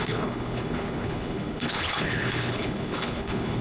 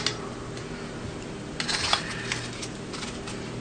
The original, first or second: second